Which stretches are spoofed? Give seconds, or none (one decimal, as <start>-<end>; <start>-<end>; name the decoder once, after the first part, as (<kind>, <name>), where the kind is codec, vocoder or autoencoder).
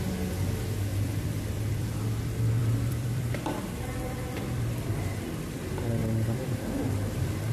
0.9-2.0 (vocoder, BigVGAN v2); 2.6-4.9; 6.0-6.8